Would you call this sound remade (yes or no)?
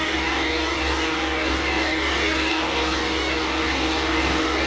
yes